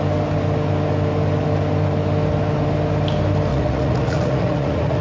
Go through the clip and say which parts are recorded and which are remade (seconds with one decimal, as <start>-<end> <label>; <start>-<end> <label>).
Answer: 0.0-3.5 recorded; 3.5-5.0 remade